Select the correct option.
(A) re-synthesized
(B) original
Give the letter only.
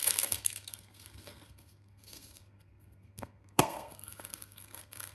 A